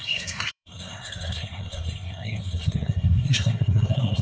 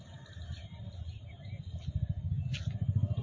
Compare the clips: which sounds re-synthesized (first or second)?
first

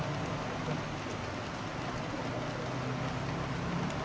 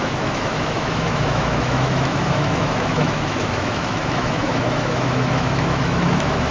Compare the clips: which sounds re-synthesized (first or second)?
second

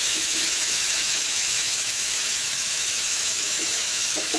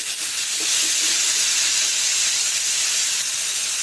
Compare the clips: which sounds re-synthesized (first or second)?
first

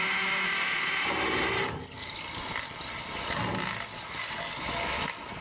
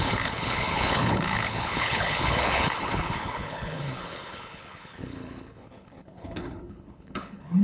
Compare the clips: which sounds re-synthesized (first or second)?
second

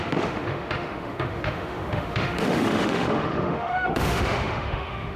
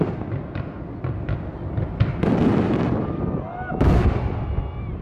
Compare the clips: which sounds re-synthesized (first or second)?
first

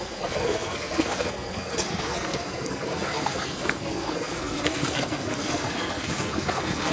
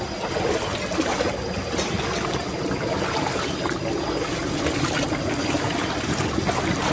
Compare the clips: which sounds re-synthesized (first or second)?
first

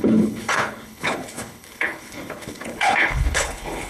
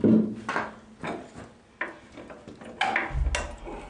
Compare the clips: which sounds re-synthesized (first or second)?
first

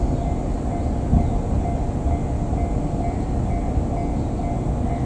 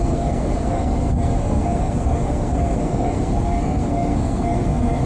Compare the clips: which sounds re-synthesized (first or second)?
second